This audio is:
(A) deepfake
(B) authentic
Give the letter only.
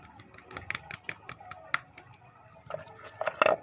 B